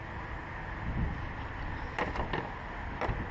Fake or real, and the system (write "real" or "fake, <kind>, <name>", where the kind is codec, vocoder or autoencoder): real